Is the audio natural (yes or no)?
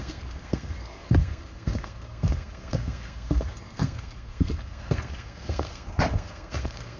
no